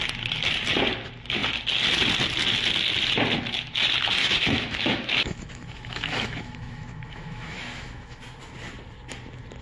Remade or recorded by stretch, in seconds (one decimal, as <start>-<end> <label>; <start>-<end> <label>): 0.0-4.2 recorded; 4.2-8.2 remade; 8.2-9.6 recorded